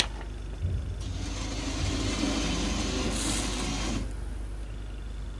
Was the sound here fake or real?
real